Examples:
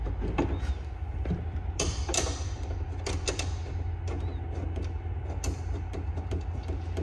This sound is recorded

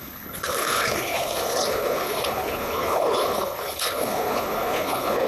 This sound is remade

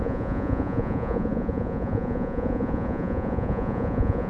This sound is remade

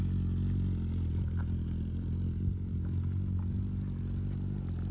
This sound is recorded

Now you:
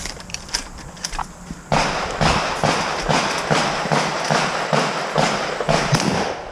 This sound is recorded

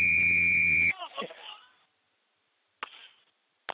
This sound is recorded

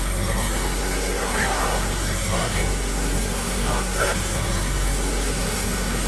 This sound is remade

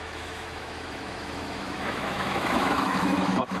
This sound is remade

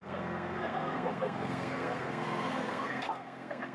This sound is remade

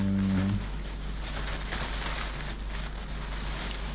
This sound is recorded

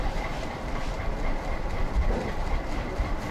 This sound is remade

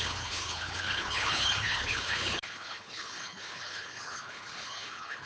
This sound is remade